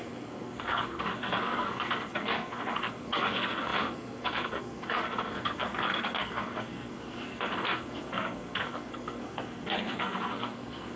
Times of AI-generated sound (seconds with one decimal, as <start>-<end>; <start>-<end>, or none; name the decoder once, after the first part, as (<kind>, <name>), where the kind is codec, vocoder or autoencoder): 0.0-11.0 (codec, SNAC)